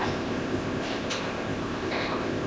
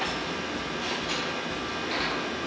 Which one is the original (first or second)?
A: second